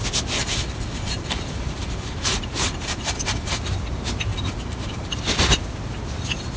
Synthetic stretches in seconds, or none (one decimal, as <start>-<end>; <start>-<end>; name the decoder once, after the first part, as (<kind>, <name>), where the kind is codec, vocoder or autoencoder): 0.4-3.6 (vocoder, BigVGAN v2); 4.3-5.1